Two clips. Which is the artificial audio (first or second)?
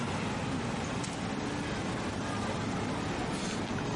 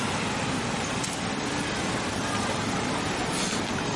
second